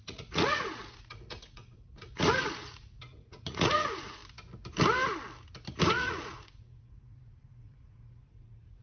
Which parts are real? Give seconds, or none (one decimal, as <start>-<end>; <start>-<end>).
4.2-5.8